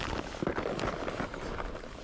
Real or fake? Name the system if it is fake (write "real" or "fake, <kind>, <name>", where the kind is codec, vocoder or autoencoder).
real